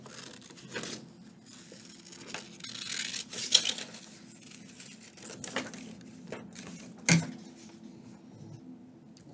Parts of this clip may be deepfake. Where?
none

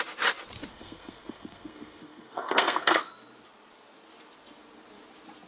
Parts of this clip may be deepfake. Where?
0.7-3.1 (codec, SNAC)